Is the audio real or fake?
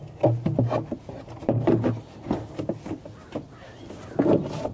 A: real